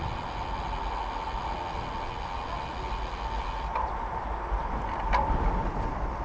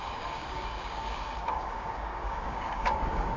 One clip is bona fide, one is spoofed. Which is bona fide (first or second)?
first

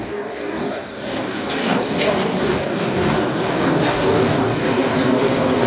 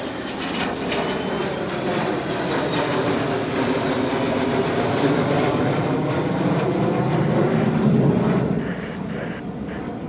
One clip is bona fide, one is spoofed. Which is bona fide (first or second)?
second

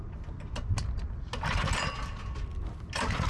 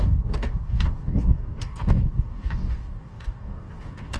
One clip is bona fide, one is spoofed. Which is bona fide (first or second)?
first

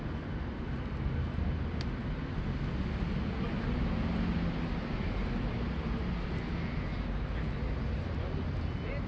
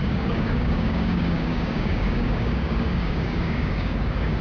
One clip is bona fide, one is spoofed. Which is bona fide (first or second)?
first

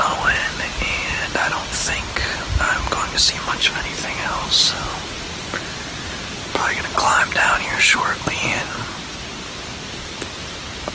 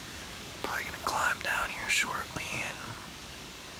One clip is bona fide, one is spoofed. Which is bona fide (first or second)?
first